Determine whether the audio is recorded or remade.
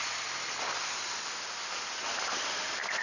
recorded